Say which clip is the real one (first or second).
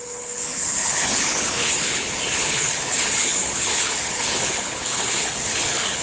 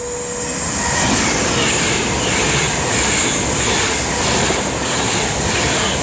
second